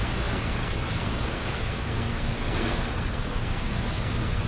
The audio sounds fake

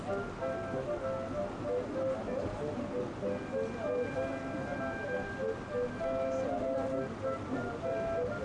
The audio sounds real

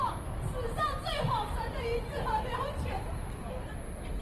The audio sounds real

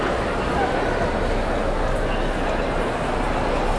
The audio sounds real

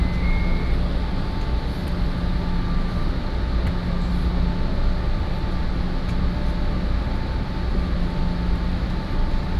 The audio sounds real